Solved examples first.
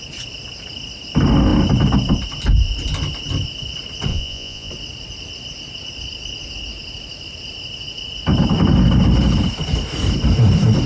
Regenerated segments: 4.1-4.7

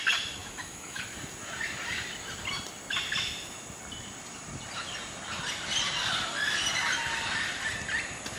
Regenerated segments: 0.4-1.0

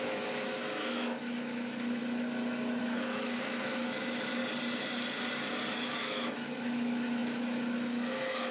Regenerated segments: 0.0-2.0; 2.8-4.4; 5.7-8.5

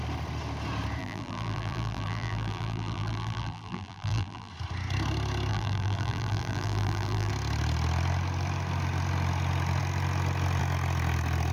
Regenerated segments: 1.0-4.5; 5.5-7.3

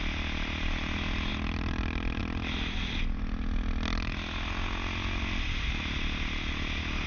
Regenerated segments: none